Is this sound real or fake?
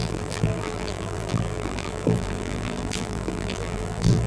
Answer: fake